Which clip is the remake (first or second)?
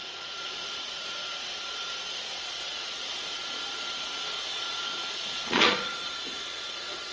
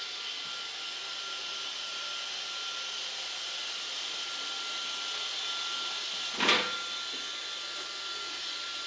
first